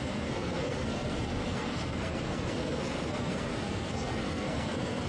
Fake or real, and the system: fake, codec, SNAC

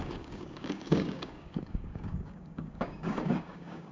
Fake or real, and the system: fake, codec, DAC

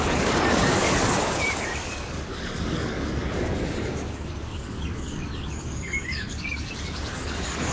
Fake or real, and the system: fake, codec, DAC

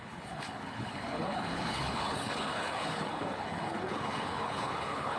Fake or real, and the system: fake, codec, HILCodec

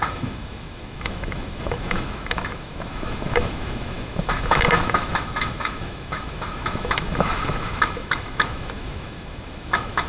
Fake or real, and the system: fake, autoencoder, DAC-VAE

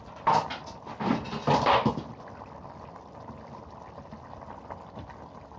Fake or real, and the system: real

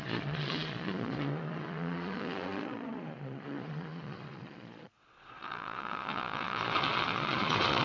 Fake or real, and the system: fake, vocoder, Vocos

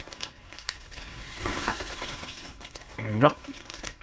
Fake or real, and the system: fake, codec, SNAC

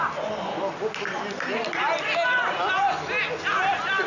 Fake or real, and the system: real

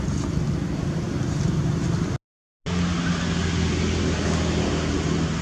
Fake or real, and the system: real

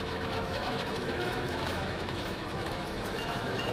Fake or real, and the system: fake, autoencoder, DAC-VAE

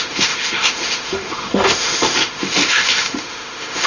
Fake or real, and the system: fake, autoencoder, DAC-VAE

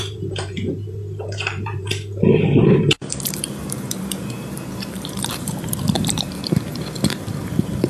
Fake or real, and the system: fake, vocoder, BigVGAN v2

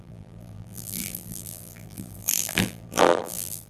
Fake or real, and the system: fake, vocoder, BigVGAN v2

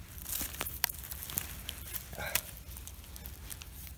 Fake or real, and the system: real